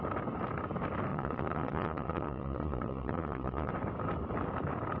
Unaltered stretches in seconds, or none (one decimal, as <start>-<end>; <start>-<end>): 0.0-1.1; 3.7-5.0